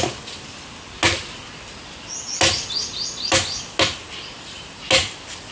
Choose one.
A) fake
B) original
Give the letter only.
B